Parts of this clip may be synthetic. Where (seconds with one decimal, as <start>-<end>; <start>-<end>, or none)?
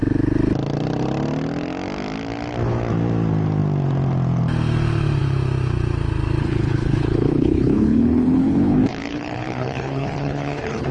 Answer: 6.4-10.9